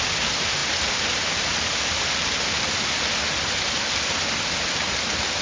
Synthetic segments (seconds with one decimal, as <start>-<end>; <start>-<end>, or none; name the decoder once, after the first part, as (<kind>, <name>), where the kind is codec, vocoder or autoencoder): none